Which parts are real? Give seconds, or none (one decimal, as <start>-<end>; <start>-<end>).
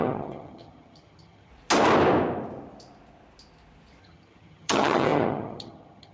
1.5-4.0